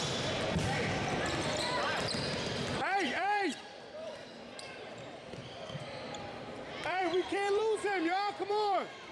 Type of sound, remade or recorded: remade